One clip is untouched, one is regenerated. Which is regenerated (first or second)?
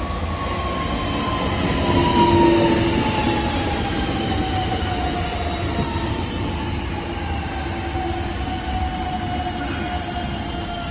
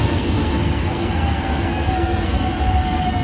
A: second